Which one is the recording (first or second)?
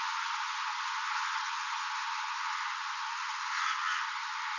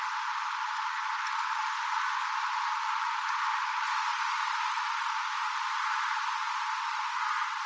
second